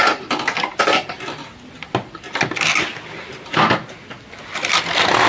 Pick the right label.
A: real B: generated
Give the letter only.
A